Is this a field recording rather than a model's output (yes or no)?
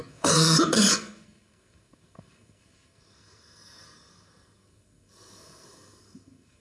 no